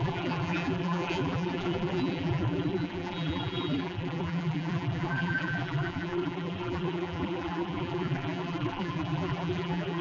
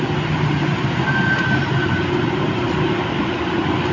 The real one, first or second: second